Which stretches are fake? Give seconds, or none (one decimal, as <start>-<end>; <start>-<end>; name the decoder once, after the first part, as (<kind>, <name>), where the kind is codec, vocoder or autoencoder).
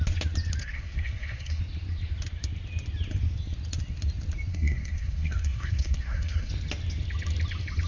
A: 0.6-1.6 (codec, SNAC); 4.5-6.5